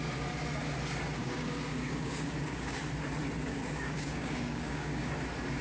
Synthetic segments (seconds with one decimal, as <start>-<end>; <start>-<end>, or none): 1.2-2.8; 3.5-5.1